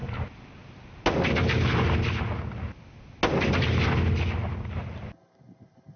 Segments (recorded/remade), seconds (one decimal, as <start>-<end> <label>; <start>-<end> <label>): 0.0-6.0 recorded